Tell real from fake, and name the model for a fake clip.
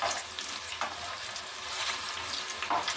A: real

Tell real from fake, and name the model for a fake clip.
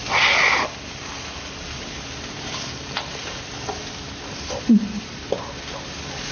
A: real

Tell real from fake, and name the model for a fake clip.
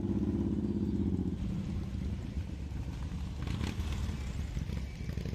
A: real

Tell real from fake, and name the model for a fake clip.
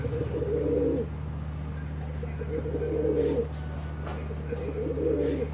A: real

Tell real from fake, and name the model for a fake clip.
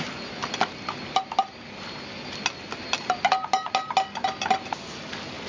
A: real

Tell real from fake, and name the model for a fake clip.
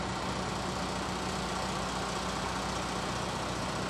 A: real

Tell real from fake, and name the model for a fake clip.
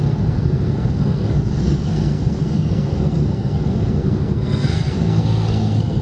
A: fake, codec, SNAC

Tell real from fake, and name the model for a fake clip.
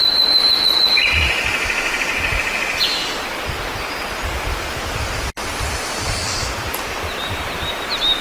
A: real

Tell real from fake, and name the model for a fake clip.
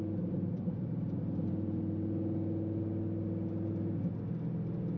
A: real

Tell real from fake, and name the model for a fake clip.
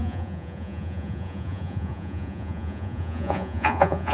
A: fake, vocoder, Vocos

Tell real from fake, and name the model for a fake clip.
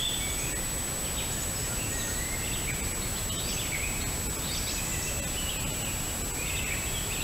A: real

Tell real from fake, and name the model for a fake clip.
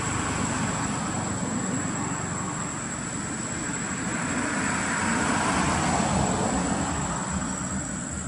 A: real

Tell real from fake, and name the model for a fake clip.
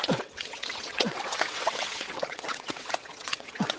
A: fake, vocoder, WaveNeXt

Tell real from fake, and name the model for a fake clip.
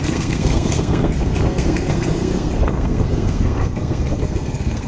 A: fake, codec, SNAC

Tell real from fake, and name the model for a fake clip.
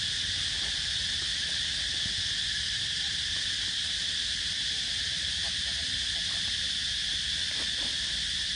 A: real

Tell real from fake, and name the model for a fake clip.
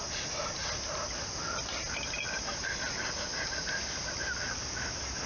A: real